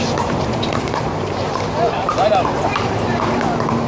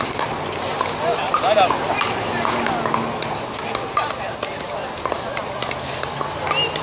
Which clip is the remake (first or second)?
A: first